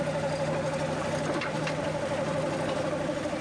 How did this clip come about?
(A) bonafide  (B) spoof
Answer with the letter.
A